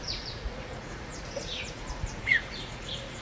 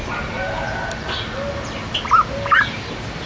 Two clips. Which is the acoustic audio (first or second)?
second